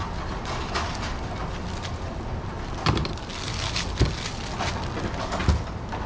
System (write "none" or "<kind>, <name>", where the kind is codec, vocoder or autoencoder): none